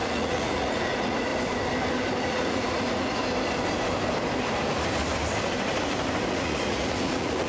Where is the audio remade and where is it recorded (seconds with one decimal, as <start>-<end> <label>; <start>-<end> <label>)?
0.0-1.3 remade; 1.3-2.2 recorded; 2.2-3.2 remade; 3.2-6.3 recorded; 6.3-7.5 remade

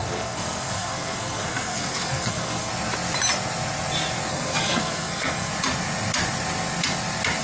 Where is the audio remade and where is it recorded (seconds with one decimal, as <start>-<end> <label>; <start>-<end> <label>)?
0.0-2.7 remade; 2.7-4.3 recorded; 4.3-5.5 remade; 5.5-7.4 recorded

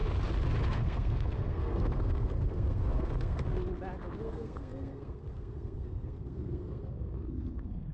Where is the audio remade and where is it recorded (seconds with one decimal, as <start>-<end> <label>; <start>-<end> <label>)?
0.0-0.7 recorded; 0.7-3.6 remade; 3.6-4.2 recorded; 4.2-7.9 remade

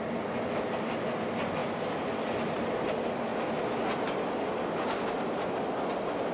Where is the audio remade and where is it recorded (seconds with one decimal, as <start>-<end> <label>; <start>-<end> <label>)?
0.0-1.6 remade; 1.6-2.2 recorded; 2.2-3.3 remade; 3.3-5.5 recorded; 5.5-6.3 remade